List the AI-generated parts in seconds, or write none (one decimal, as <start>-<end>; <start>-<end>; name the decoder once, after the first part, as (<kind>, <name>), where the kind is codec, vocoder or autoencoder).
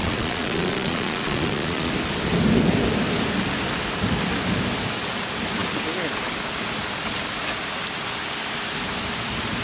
0.0-1.9 (vocoder, Vocos)